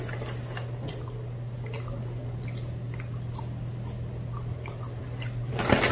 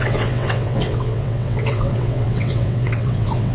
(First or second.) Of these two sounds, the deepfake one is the second